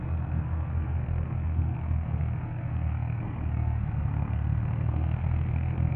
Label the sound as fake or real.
fake